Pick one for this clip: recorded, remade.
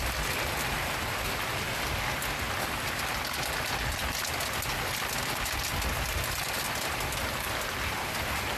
recorded